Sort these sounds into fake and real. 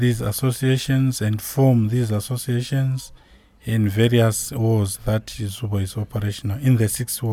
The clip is real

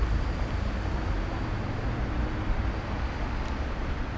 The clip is real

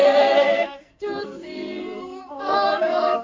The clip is fake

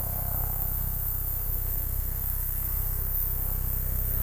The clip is fake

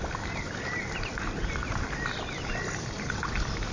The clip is real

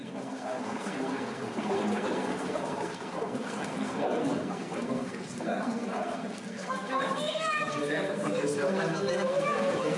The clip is fake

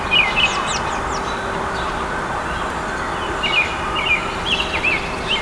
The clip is real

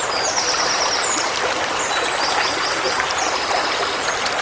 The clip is real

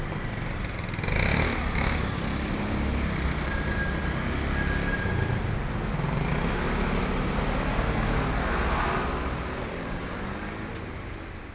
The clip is real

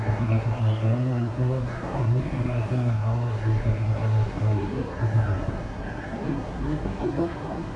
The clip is fake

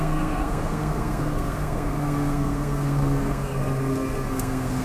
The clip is fake